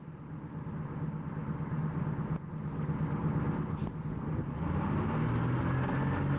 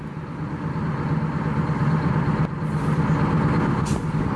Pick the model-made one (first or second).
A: second